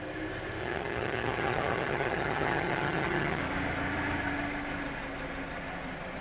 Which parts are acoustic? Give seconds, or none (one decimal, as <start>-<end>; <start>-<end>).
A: 0.0-0.6; 3.4-6.2